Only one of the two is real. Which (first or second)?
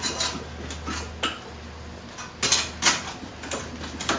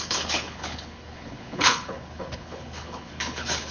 first